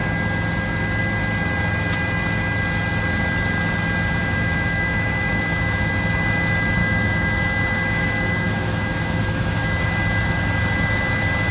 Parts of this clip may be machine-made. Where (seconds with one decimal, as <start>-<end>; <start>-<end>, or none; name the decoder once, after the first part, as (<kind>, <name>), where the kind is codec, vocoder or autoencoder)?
4.2-5.9 (autoencoder, DAC-VAE); 6.8-9.9